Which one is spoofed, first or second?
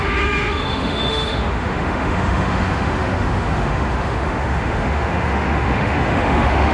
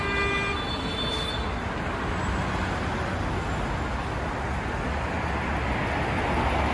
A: first